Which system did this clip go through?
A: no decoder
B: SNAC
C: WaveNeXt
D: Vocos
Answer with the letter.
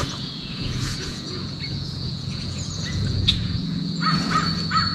D